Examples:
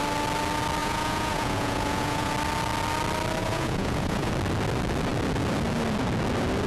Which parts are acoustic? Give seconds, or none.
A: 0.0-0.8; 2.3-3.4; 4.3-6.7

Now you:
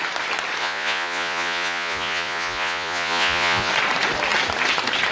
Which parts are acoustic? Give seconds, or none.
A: 0.0-0.6; 3.7-5.1

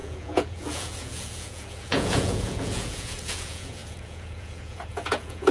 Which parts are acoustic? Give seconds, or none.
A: none

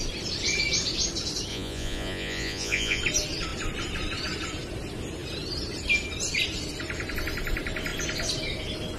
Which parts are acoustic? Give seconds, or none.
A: 0.0-1.5; 3.0-9.0

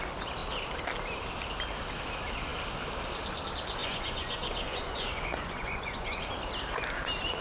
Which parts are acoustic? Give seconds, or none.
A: 0.0-3.8; 6.2-7.4

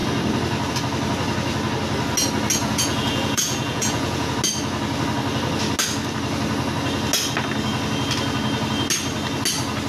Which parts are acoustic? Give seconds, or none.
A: 0.0-2.6; 4.3-9.9

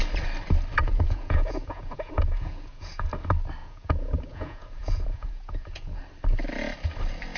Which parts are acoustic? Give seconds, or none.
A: 0.0-0.8; 3.1-3.6; 6.0-7.4

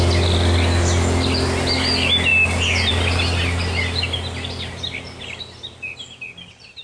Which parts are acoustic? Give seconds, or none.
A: 0.0-6.8